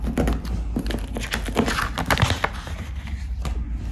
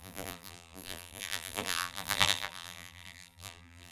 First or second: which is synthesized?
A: second